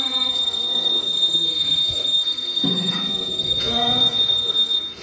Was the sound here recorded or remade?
remade